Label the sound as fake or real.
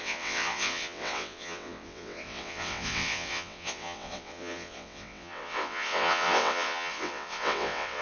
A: fake